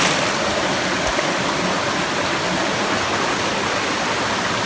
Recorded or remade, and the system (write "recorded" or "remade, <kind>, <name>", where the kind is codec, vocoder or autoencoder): recorded